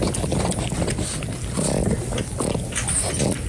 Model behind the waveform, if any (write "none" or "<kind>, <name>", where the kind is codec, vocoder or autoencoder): none